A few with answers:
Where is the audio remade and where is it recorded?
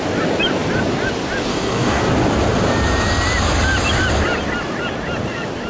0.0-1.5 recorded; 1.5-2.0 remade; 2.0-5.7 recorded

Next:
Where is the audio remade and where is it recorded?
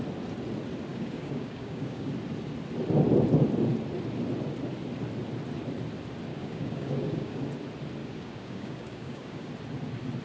0.0-0.9 recorded; 0.9-2.1 remade; 2.1-6.3 recorded; 6.3-7.4 remade; 7.4-8.0 recorded; 8.0-9.5 remade; 9.5-10.2 recorded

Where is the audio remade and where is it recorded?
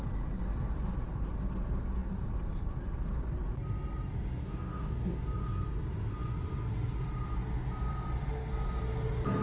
0.0-4.4 recorded; 4.4-5.2 remade; 5.2-9.4 recorded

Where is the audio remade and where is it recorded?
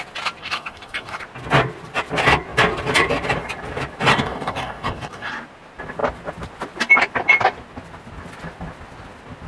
0.0-0.4 recorded; 0.4-1.2 remade; 1.2-4.1 recorded; 4.1-5.3 remade; 5.3-9.5 recorded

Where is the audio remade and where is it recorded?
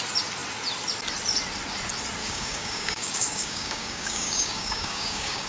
0.0-2.2 recorded; 2.2-5.5 remade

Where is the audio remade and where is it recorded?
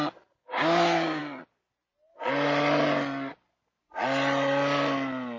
0.0-0.4 recorded; 0.4-1.2 remade; 1.2-5.4 recorded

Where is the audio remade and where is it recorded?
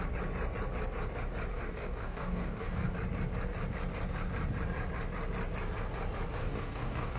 0.0-1.5 recorded; 1.5-2.9 remade; 2.9-6.4 recorded; 6.4-7.2 remade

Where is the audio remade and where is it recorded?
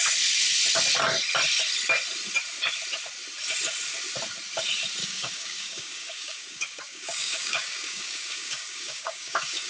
0.0-5.0 recorded; 5.0-9.7 remade